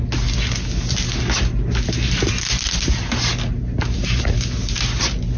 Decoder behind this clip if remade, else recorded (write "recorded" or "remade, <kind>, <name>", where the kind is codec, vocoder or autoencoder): recorded